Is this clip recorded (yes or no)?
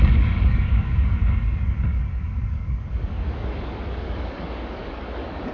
no